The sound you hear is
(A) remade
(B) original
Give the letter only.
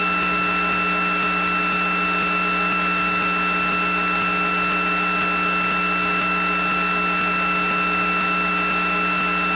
B